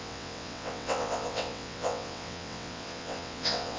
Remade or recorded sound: remade